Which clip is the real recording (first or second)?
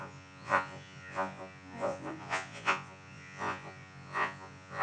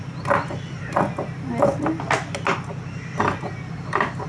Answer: second